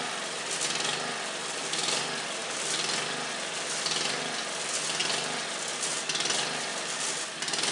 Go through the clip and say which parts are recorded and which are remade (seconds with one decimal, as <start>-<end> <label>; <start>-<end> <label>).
0.0-7.7 recorded